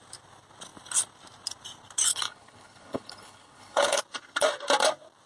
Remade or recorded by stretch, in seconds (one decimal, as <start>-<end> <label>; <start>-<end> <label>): 0.0-2.1 recorded; 2.1-4.0 remade; 4.0-5.3 recorded